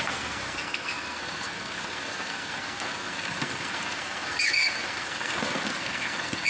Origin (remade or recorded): remade